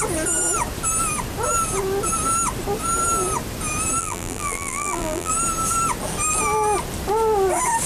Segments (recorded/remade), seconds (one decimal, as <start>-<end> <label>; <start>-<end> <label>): 0.0-4.0 recorded; 4.0-5.3 remade; 5.3-7.9 recorded